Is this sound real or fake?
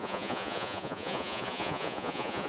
fake